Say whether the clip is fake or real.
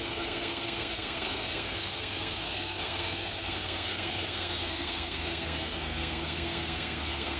fake